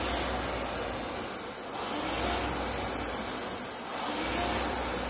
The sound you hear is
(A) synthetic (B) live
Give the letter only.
B